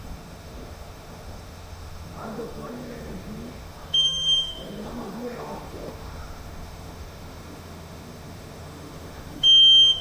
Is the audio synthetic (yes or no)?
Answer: yes